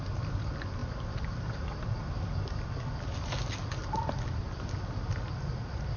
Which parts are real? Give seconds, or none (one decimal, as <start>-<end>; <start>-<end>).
0.0-6.0